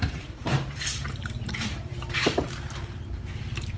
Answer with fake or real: fake